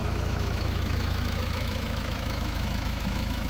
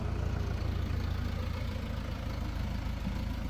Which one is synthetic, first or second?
first